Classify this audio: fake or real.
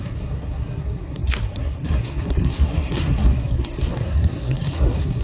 fake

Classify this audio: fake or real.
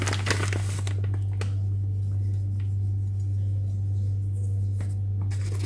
real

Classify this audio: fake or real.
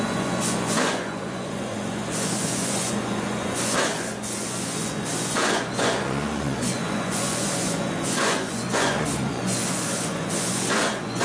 fake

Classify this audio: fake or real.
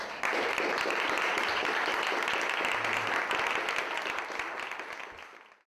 real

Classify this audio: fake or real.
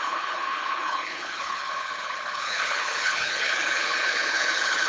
fake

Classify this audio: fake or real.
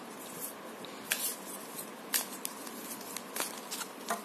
real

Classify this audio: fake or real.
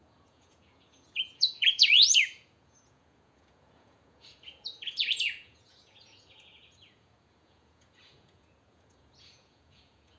fake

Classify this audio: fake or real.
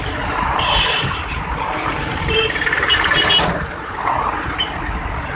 fake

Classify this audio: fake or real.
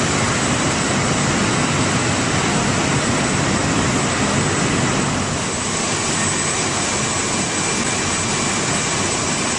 real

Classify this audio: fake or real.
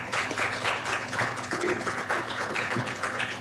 fake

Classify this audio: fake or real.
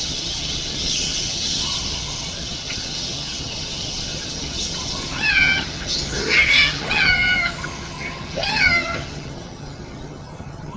fake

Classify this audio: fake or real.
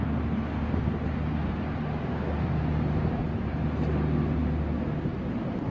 real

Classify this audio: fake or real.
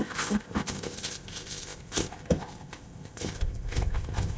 fake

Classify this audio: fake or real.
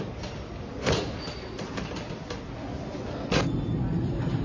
real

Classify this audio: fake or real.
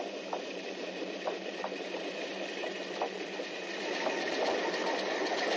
real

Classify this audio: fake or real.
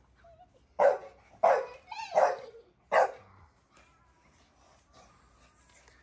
real